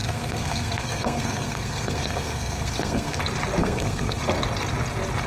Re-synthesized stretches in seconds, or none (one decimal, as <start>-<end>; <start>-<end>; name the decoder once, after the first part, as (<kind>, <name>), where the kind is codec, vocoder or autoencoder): 0.0-3.2 (codec, SNAC); 3.6-4.2